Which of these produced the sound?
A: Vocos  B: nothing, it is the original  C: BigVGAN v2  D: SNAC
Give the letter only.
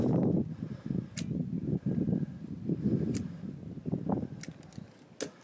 B